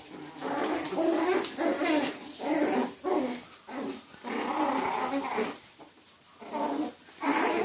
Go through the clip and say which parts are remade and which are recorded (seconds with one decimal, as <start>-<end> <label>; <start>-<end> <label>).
0.0-7.6 recorded